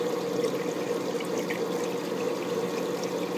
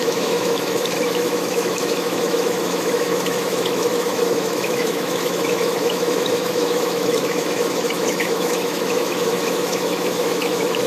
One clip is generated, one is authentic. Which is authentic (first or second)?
first